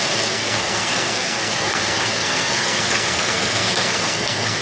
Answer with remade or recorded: remade